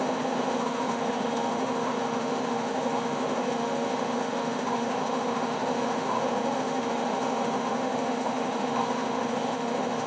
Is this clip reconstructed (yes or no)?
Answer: yes